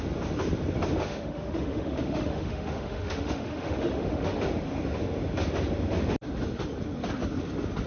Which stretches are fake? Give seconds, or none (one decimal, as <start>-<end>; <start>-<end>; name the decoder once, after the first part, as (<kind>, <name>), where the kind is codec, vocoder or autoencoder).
1.0-4.4 (autoencoder, DAC-VAE)